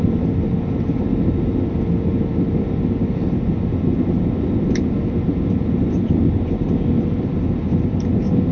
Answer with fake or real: real